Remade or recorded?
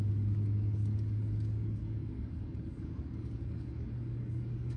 remade